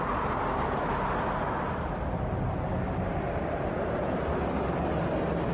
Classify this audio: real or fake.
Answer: real